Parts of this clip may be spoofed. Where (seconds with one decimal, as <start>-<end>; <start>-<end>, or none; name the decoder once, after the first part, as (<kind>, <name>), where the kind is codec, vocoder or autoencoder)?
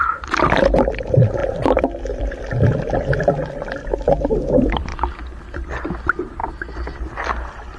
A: 0.0-4.9 (vocoder, BigVGAN v2); 5.4-7.8